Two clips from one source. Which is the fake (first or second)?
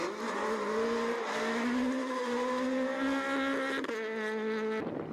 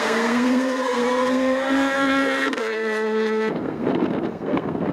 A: second